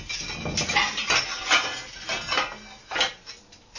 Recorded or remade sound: recorded